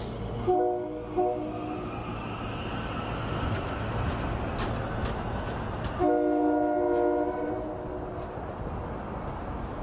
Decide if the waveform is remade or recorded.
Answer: recorded